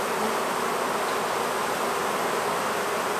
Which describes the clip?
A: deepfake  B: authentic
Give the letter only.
B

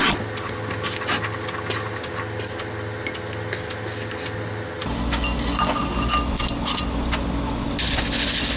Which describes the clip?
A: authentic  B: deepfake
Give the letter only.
A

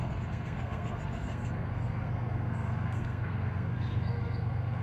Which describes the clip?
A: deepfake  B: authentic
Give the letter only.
A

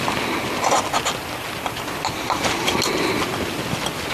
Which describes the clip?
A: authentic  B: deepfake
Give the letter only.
A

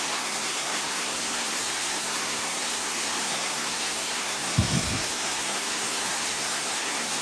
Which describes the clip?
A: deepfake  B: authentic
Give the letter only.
A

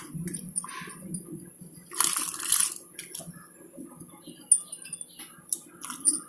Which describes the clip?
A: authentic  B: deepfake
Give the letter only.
A